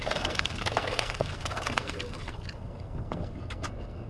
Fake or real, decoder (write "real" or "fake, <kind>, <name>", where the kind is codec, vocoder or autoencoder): fake, codec, SNAC